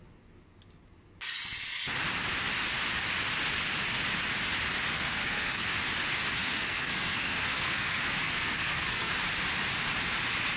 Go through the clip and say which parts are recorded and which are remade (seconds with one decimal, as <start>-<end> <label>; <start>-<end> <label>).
0.0-4.9 recorded; 4.9-5.7 remade; 5.7-6.4 recorded; 6.4-9.1 remade; 9.1-10.6 recorded